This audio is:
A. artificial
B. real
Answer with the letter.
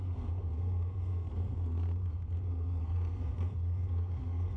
A